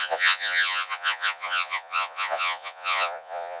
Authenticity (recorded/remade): remade